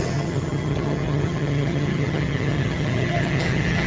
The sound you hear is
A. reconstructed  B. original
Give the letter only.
A